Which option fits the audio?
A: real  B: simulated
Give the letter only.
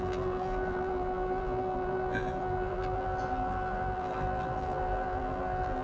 B